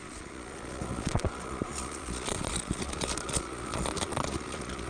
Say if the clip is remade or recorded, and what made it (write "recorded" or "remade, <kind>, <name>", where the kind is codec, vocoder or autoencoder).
remade, vocoder, Vocos